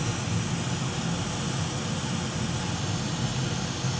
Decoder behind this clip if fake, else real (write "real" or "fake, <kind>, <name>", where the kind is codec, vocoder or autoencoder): real